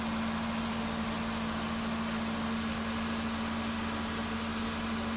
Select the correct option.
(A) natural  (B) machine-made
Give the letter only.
A